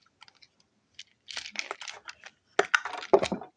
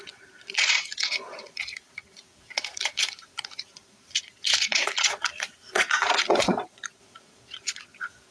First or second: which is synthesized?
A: second